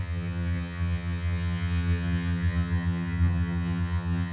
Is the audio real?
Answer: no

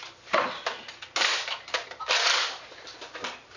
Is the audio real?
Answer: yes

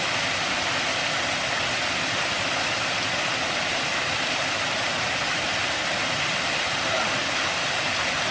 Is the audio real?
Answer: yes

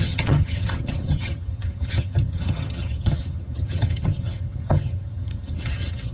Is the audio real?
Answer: no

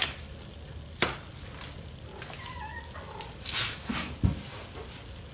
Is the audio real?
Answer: yes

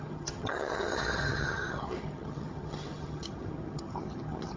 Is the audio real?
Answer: no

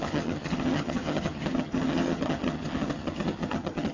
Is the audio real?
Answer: no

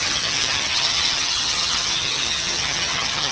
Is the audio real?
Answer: no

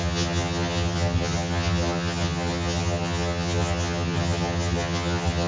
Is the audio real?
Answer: no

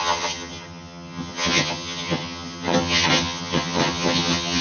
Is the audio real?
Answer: no